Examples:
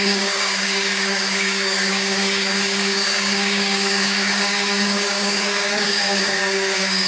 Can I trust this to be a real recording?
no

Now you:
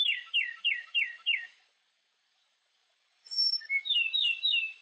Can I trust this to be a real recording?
no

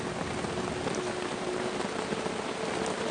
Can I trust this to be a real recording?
yes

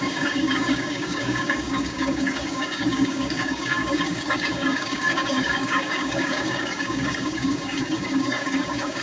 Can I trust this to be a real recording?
no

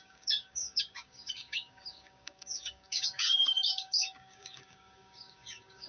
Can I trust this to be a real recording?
no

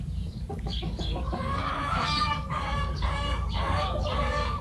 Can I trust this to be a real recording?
no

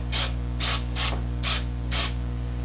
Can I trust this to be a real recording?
no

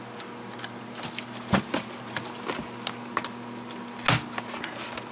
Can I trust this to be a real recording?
yes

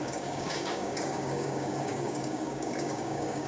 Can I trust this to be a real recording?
no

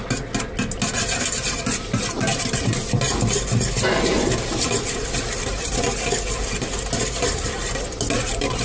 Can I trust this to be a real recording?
yes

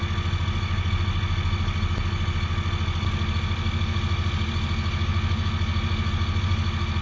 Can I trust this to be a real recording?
yes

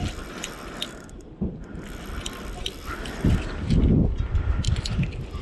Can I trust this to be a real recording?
yes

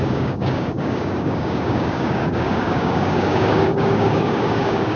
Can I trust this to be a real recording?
no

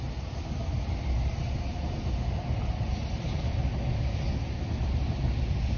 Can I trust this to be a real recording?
yes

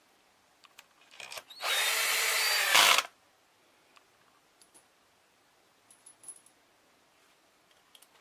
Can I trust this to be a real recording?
yes